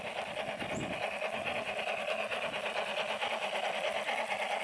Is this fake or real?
real